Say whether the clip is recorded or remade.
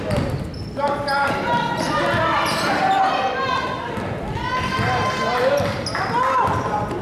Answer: recorded